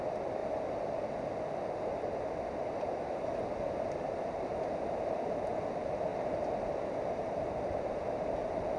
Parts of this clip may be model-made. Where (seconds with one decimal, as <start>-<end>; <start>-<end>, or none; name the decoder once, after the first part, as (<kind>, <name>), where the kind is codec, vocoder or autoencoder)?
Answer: 6.1-6.7 (vocoder, BigVGAN v2)